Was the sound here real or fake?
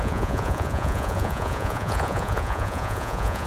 fake